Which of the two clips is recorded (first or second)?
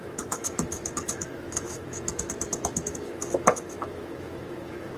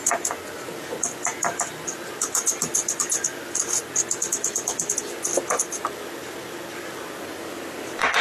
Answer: second